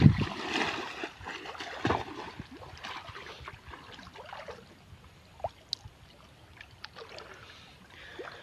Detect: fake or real real